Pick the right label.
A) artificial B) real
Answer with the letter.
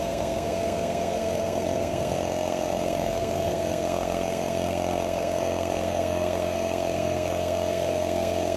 A